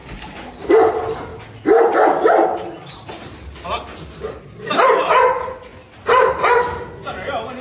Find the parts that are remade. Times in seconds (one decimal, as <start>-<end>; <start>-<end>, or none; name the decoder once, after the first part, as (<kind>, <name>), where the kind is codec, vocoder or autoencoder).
none